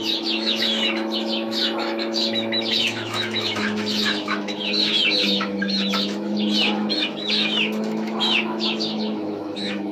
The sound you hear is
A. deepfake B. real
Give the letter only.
A